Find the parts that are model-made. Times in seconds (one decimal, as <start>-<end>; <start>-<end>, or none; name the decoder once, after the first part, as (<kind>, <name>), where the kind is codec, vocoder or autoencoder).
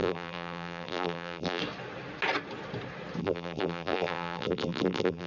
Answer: 0.0-1.6 (vocoder, BigVGAN v2); 3.2-5.3